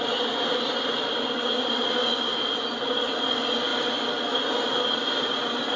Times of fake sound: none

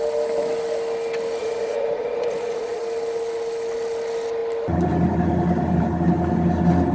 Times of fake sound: 1.4-2.8

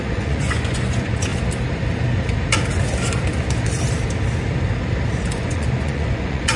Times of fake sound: 0.0-1.3; 5.3-6.6

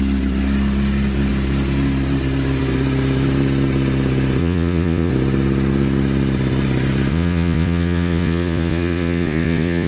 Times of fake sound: 4.4-5.1; 7.1-9.9

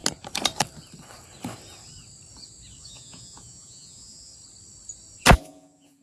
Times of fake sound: 2.8-4.3; 5.4-6.0

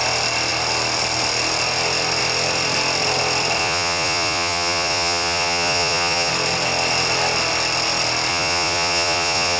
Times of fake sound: 3.6-6.3; 8.3-9.6

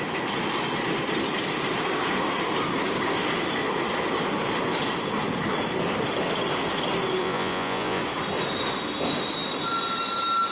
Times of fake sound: 7.2-8.0